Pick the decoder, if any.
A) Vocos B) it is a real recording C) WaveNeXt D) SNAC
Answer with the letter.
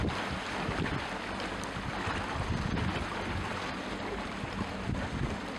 B